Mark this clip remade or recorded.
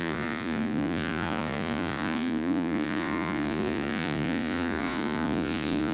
remade